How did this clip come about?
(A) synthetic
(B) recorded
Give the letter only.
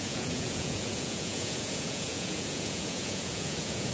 A